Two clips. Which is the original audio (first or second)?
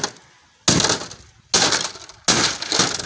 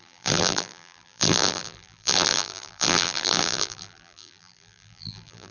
first